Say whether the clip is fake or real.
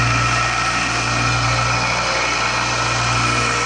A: real